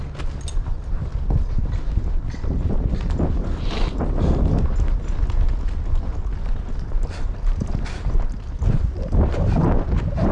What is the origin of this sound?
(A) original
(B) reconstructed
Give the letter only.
A